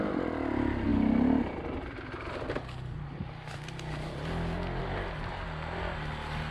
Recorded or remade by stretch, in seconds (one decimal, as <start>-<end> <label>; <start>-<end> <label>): 0.0-6.5 recorded